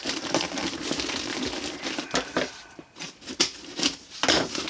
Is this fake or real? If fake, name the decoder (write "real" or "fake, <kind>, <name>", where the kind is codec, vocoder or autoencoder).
real